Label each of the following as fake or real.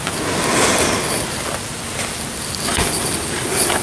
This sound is real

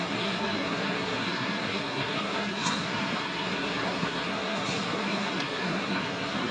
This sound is fake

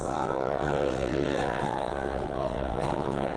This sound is fake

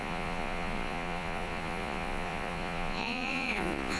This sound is fake